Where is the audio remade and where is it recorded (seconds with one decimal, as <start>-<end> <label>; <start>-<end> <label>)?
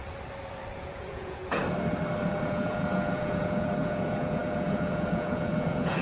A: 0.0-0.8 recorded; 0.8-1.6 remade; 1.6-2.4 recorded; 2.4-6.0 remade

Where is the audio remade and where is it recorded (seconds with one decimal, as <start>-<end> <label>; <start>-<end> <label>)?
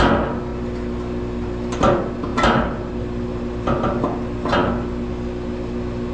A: 0.0-6.1 recorded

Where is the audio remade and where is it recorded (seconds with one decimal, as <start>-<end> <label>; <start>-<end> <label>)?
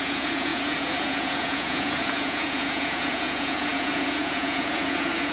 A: 0.0-5.3 remade